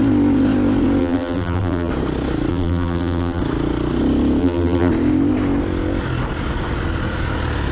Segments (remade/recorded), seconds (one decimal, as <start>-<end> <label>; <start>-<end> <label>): 0.0-1.0 recorded; 1.0-1.9 remade; 1.9-2.5 recorded; 2.5-3.4 remade; 3.4-4.4 recorded; 4.4-4.9 remade; 4.9-7.7 recorded

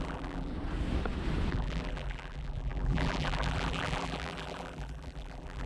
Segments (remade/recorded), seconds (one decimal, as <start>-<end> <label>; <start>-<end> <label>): 0.0-0.5 remade; 0.5-1.5 recorded; 1.5-5.7 remade